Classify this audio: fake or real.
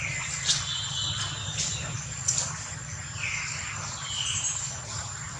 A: real